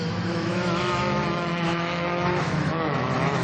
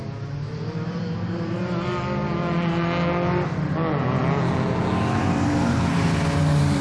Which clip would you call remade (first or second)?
first